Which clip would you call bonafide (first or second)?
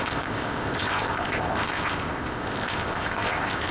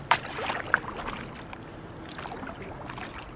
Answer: second